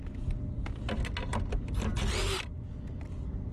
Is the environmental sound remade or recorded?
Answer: recorded